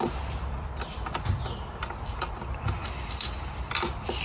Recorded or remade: recorded